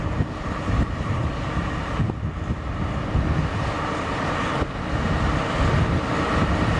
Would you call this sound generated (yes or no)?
no